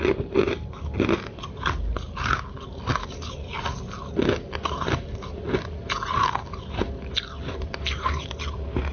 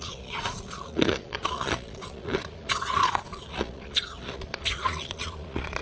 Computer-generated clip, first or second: second